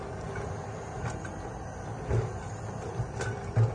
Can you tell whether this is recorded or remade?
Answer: recorded